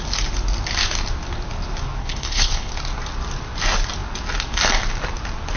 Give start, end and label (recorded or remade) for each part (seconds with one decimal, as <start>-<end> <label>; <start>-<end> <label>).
0.0-2.0 recorded; 2.0-2.7 remade; 2.7-5.6 recorded

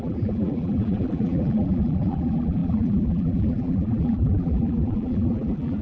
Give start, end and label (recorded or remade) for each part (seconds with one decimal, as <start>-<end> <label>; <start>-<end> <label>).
0.0-5.8 remade

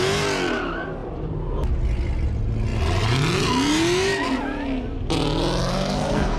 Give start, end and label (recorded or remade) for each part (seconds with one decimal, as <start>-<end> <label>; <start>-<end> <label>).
0.0-5.7 recorded; 5.7-6.4 remade

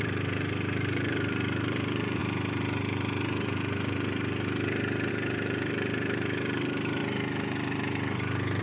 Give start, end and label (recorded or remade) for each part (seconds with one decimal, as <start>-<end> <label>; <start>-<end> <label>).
0.0-2.2 remade; 2.2-5.1 recorded; 5.1-7.0 remade; 7.0-8.6 recorded

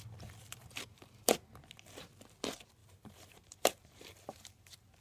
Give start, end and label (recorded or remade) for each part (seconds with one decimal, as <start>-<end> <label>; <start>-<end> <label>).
0.0-0.6 recorded; 0.6-1.6 remade; 1.6-2.8 recorded; 2.8-5.0 remade

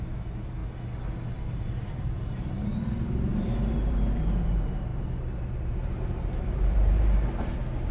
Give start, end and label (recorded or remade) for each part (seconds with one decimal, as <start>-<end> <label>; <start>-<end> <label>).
0.0-0.6 remade; 0.6-1.5 recorded; 1.5-4.9 remade; 4.9-5.7 recorded; 5.7-7.9 remade

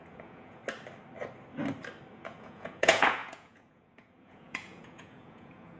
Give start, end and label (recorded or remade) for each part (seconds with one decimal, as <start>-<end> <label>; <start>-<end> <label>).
0.0-0.6 remade; 0.6-2.1 recorded; 2.1-5.8 remade